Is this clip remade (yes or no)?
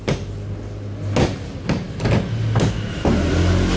no